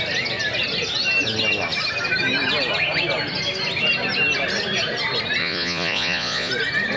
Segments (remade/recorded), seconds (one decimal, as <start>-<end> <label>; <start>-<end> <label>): 0.0-5.4 recorded; 5.4-6.5 remade; 6.5-7.0 recorded